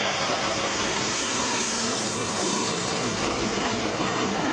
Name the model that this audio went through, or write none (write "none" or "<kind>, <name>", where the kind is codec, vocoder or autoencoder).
codec, SNAC